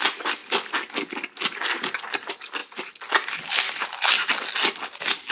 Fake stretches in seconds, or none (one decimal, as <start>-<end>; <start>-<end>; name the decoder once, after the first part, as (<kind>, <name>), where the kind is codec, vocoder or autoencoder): none